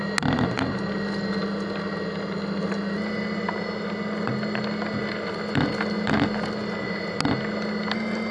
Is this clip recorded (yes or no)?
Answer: yes